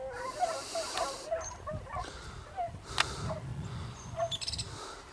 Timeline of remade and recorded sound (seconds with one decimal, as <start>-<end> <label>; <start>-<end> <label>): 0.0-3.5 recorded; 3.5-4.3 remade; 4.3-5.1 recorded